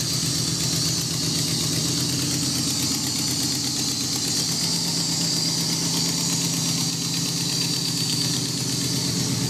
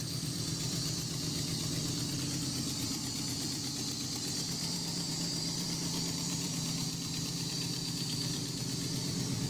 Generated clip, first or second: second